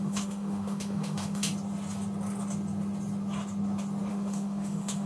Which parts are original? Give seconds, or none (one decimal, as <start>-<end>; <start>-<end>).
1.5-4.1

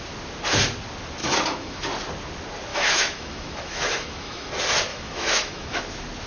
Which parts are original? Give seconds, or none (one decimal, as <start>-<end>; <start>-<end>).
0.0-1.2; 1.9-2.7; 4.5-4.9; 5.8-6.3

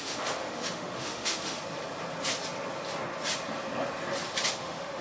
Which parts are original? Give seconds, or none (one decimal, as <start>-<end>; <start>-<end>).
1.6-4.6

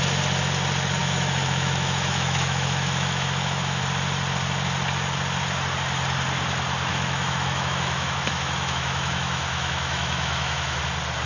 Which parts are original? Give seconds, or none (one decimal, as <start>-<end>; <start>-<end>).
0.0-1.0; 3.8-6.9; 10.8-11.3